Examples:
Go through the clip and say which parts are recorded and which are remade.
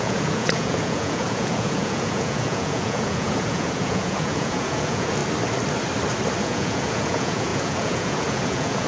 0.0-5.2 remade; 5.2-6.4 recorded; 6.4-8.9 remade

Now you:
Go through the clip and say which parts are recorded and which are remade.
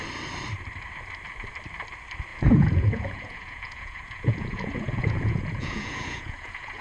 0.0-2.3 recorded; 2.3-6.8 remade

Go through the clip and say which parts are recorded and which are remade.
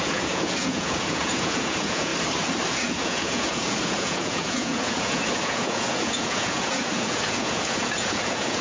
0.0-2.1 remade; 2.1-2.7 recorded; 2.7-8.6 remade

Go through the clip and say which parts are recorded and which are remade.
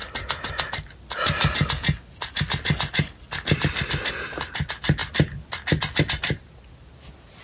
0.0-7.4 recorded